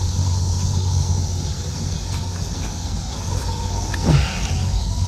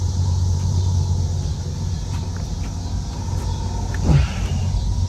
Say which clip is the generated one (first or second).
first